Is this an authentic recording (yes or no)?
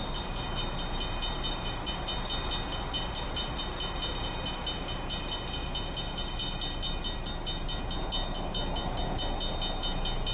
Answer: yes